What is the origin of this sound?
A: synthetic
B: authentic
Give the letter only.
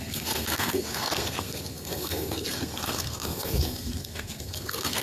A